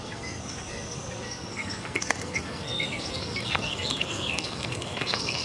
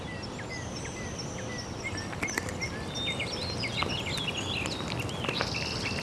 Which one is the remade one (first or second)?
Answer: first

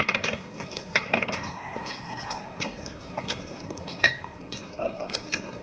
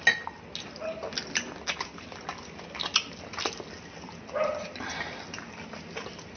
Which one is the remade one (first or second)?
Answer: first